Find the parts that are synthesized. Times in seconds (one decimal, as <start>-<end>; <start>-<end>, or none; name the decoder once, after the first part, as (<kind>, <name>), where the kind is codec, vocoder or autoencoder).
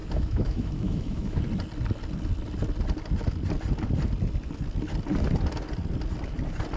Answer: 0.0-1.4 (autoencoder, DAC-VAE)